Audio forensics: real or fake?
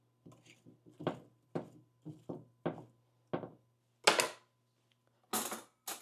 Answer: real